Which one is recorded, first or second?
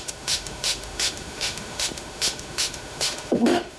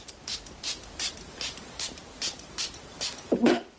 second